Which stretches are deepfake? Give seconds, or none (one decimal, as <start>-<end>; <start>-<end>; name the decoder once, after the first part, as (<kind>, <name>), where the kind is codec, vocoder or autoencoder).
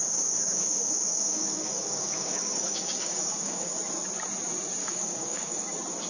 0.0-3.7 (codec, DAC); 4.8-5.6